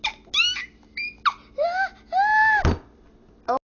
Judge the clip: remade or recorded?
recorded